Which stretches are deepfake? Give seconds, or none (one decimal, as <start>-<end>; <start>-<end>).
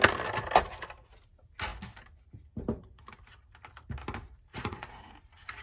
4.5-5.1